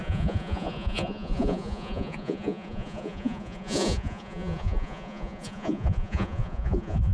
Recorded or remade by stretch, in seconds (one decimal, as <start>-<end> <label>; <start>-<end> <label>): 0.0-7.1 remade